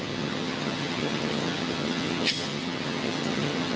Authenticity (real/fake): fake